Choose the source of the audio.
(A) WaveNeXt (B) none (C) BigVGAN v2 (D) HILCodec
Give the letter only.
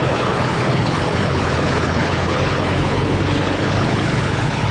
D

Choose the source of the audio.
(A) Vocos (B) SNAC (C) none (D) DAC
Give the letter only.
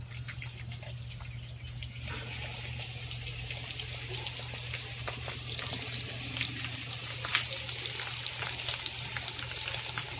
C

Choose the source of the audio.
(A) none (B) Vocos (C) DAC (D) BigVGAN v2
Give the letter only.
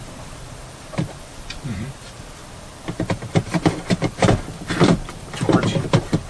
D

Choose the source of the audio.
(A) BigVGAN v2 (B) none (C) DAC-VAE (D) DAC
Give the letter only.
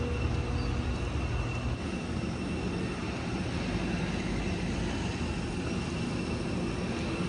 B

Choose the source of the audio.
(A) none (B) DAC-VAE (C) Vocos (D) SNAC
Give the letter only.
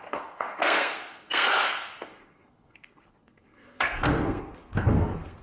D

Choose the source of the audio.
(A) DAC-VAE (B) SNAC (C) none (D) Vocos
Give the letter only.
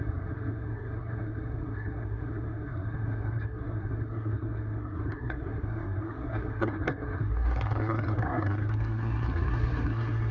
B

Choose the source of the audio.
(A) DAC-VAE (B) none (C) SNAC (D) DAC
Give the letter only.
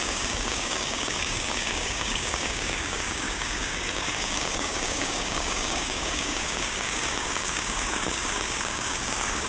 D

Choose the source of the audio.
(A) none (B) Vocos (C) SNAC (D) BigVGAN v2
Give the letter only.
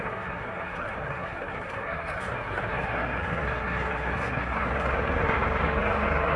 C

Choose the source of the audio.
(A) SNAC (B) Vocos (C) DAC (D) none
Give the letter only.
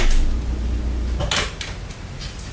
D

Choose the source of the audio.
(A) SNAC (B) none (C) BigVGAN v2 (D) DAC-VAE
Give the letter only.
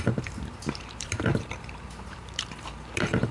C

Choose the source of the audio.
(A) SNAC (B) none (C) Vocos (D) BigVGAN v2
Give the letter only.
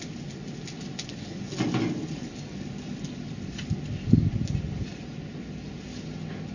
B